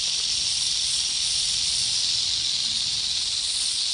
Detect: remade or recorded recorded